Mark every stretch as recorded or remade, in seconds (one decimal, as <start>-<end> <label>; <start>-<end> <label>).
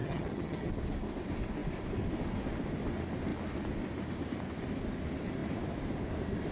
0.0-0.7 remade; 0.7-6.5 recorded